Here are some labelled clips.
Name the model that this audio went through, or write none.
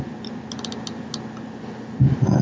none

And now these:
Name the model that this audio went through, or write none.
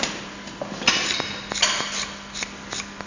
none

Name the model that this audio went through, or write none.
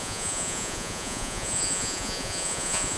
vocoder, Vocos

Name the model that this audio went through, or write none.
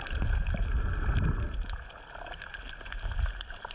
none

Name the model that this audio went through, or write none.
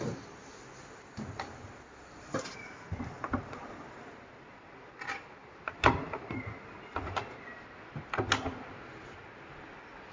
none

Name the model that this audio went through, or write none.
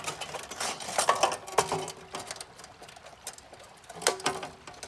none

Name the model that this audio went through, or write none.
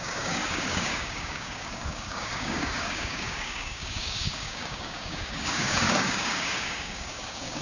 codec, DAC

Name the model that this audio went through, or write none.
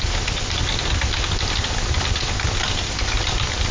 none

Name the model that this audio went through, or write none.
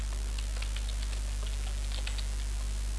none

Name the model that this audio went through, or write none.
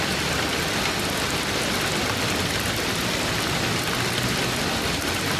none